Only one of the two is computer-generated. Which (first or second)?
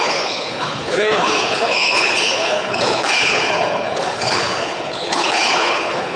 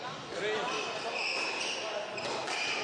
first